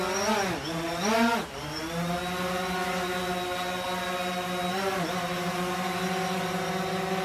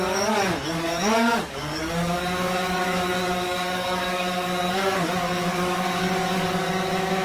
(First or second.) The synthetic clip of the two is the second